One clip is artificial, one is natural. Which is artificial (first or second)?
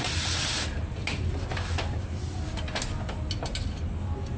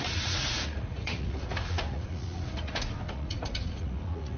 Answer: second